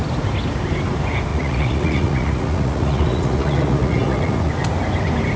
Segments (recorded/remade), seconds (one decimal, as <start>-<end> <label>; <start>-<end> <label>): 0.0-1.3 recorded; 1.3-4.5 remade; 4.5-5.4 recorded

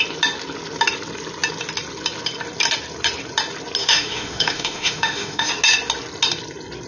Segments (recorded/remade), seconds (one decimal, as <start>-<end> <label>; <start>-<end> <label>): 0.0-3.8 recorded; 3.8-5.5 remade; 5.5-6.9 recorded

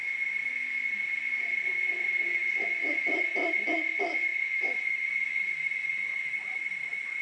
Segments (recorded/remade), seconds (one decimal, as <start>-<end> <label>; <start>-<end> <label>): 0.0-7.2 recorded

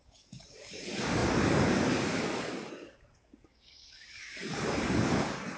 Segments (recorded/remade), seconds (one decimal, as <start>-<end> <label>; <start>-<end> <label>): 0.0-5.6 remade

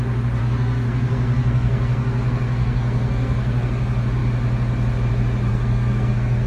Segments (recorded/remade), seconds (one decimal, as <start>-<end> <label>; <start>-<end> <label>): 0.0-0.4 recorded; 0.4-3.8 remade; 3.8-5.5 recorded; 5.5-6.5 remade

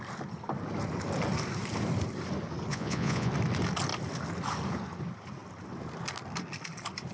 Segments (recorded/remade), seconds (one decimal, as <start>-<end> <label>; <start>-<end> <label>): 0.0-2.7 recorded; 2.7-3.3 remade; 3.3-7.1 recorded